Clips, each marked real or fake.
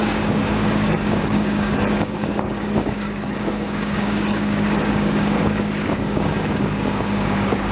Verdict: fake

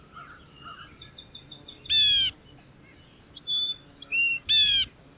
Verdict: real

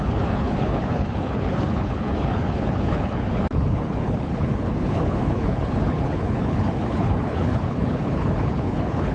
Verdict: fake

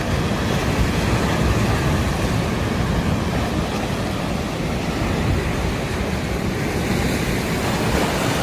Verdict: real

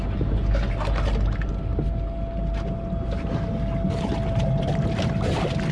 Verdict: real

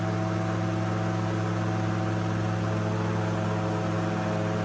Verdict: real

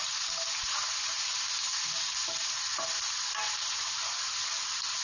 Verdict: real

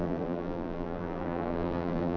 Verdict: fake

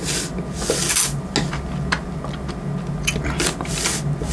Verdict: real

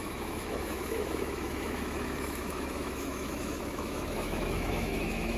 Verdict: fake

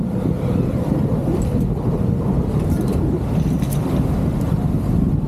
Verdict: real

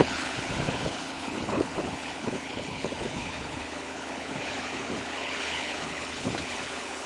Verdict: fake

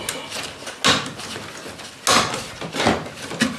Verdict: real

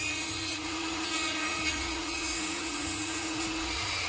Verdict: fake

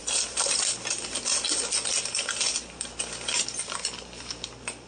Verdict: real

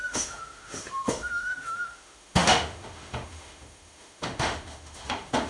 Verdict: fake